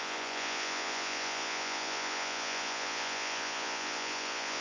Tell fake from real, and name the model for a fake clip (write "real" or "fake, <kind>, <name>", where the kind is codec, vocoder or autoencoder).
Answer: fake, vocoder, Vocos